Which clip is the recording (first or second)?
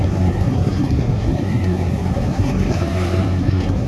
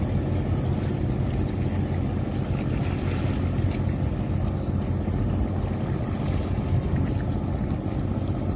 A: second